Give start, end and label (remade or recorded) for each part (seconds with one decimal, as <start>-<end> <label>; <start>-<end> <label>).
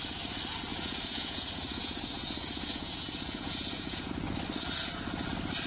0.0-0.7 recorded; 0.7-4.1 remade; 4.1-5.7 recorded